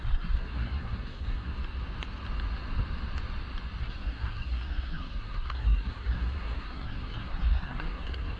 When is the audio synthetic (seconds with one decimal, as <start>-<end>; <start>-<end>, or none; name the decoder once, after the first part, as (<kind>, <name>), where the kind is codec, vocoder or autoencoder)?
0.0-1.5 (codec, SNAC); 3.8-8.4